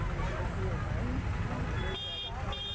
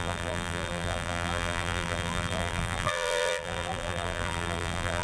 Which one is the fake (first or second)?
second